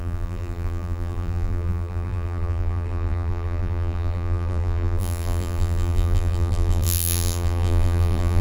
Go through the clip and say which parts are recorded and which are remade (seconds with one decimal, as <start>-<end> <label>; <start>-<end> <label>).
0.0-8.4 remade